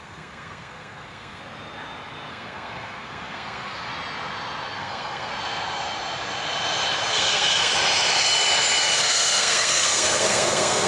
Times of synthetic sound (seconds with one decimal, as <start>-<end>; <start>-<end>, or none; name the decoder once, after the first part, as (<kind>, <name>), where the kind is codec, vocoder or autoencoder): 0.0-1.4 (codec, SNAC); 2.3-3.9; 4.8-5.3; 7.1-7.7; 9.0-10.9